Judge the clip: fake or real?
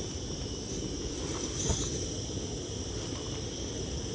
real